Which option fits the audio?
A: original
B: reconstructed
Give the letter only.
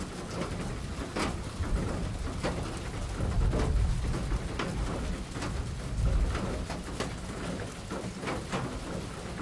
A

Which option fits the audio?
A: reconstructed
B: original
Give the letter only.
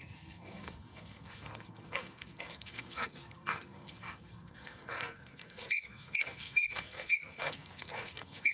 A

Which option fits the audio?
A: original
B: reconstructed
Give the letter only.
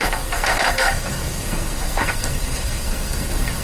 B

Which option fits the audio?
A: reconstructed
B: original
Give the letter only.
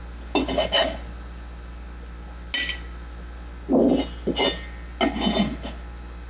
B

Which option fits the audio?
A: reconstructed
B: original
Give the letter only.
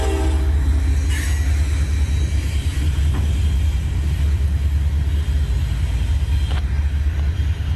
B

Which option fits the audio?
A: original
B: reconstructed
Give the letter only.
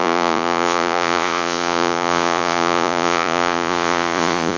B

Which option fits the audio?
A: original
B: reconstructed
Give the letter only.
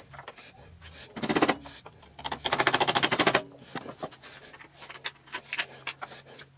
A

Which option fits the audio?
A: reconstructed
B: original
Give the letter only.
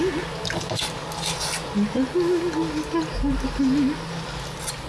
B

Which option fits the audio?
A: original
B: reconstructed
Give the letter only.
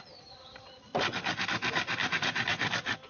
A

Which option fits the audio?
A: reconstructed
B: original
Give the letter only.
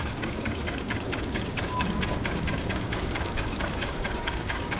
A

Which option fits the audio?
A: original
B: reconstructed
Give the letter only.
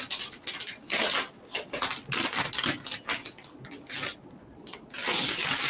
A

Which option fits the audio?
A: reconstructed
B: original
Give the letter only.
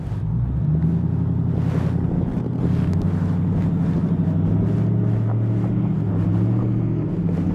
B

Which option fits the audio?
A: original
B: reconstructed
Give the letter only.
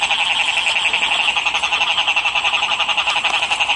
A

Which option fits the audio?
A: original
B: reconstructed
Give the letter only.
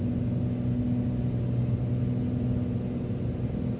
A